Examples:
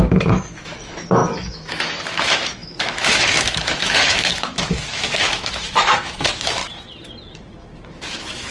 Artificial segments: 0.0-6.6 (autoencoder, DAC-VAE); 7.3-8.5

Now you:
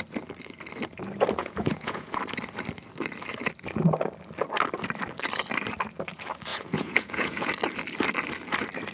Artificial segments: 1.4-2.2 (vocoder, Vocos); 6.5-7.5

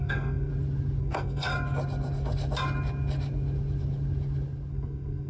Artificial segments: 0.0-0.5 (codec, SNAC); 1.0-1.5; 4.7-5.3